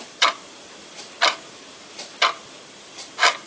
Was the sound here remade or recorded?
recorded